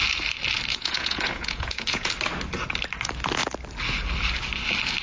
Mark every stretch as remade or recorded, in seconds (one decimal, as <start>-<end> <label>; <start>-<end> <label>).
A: 0.0-0.7 recorded; 0.7-2.1 remade; 2.1-5.0 recorded